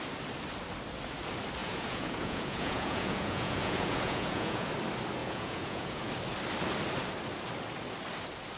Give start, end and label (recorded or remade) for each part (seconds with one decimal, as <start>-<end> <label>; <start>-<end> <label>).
0.0-1.6 recorded; 1.6-4.7 remade; 4.7-5.2 recorded; 5.2-6.1 remade; 6.1-8.6 recorded